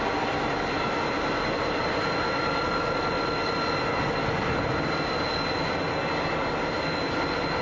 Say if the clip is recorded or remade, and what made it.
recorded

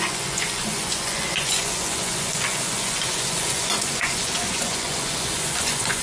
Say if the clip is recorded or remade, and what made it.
remade, vocoder, Vocos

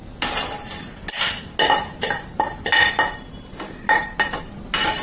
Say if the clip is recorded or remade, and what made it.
recorded